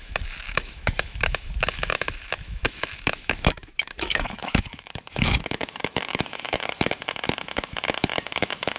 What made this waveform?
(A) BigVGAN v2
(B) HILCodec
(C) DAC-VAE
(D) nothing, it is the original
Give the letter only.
C